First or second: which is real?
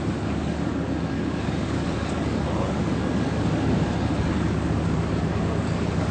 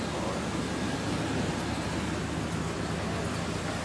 second